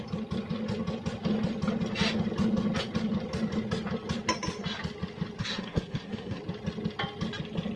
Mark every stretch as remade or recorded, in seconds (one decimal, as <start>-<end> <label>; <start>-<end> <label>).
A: 0.0-5.4 recorded; 5.4-6.4 remade; 6.4-7.8 recorded

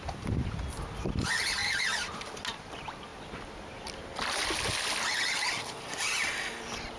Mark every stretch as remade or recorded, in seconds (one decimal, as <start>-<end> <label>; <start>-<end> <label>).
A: 0.0-7.0 recorded

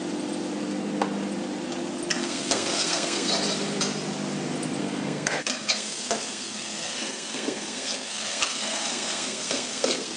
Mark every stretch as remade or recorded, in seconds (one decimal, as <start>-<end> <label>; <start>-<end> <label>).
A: 0.0-2.1 recorded; 2.1-3.3 remade; 3.3-4.8 recorded; 4.8-10.2 remade

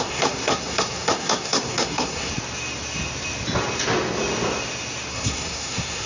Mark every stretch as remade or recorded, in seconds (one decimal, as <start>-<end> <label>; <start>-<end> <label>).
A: 0.0-2.3 remade; 2.3-5.1 recorded; 5.1-6.1 remade

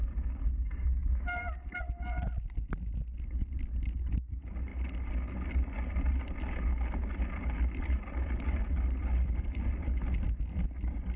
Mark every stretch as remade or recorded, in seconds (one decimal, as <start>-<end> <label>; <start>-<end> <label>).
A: 0.0-11.2 recorded